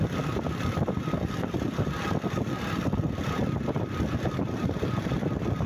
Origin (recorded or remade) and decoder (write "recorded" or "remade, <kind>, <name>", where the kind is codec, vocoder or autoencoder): recorded